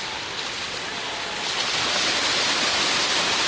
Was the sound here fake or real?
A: real